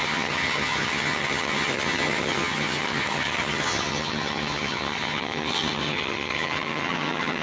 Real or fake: fake